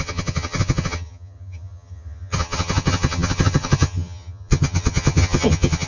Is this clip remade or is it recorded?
remade